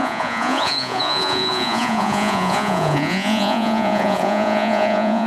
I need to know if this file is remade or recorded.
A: remade